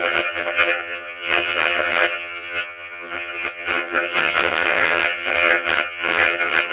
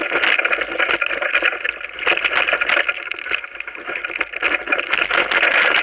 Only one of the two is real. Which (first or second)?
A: second